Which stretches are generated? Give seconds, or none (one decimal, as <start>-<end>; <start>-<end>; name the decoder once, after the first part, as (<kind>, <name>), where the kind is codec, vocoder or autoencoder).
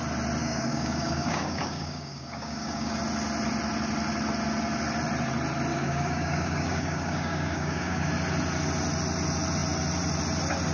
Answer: 0.4-3.0 (codec, DAC); 5.7-8.1